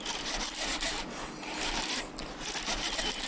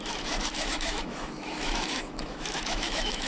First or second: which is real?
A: first